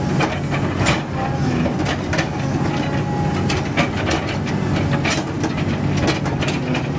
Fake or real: real